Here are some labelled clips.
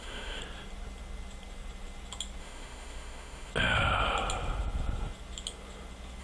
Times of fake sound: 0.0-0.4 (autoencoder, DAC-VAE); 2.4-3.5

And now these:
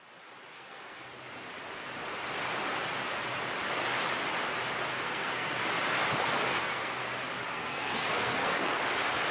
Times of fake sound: 0.5-1.1 (codec, SNAC); 4.9-5.6; 6.5-7.1; 7.5-8.8

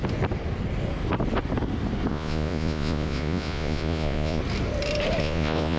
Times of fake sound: 2.1-4.4 (vocoder, Vocos); 5.2-5.8

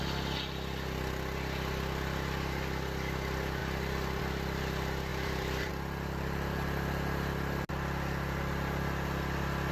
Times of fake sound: 5.1-5.7 (vocoder, BigVGAN v2)

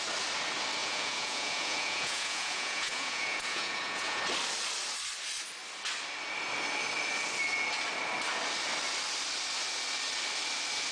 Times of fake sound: 0.8-4.2 (vocoder, Vocos)

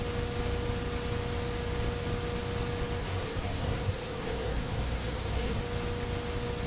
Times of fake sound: 3.0-5.6 (codec, SNAC)

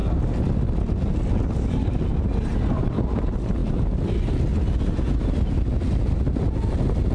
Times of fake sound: none

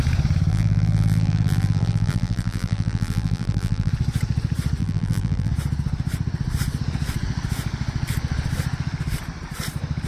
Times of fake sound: 0.5-3.9 (vocoder, BigVGAN v2); 4.8-5.5